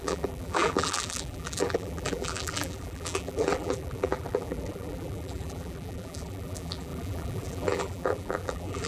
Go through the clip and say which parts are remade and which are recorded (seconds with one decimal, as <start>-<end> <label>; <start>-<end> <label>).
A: 0.0-8.9 remade